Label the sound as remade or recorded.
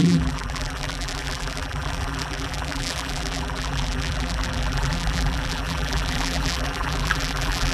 remade